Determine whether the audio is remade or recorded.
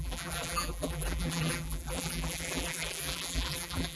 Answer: remade